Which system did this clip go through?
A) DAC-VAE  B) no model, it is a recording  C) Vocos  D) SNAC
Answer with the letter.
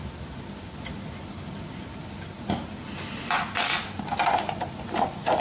B